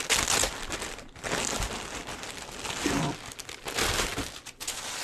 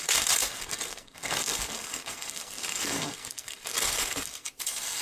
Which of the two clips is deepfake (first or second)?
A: second